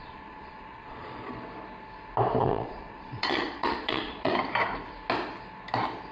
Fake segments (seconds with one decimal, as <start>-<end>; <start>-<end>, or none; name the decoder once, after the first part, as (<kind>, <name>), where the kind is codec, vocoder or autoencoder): 0.0-1.3 (vocoder, Vocos); 2.4-4.3